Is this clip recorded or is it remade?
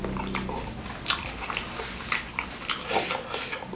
recorded